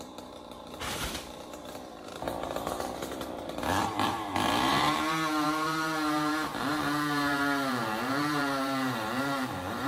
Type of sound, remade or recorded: remade